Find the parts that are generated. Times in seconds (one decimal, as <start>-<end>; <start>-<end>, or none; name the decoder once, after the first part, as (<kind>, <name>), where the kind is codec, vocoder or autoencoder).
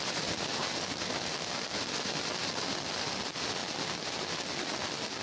0.0-3.6 (vocoder, BigVGAN v2)